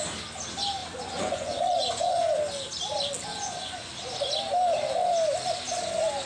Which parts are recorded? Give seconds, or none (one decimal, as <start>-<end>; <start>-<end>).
0.0-0.8; 2.3-3.3; 3.9-6.3